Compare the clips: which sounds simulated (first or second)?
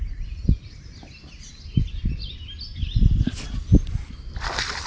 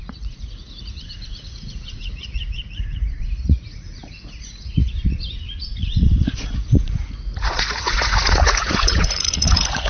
second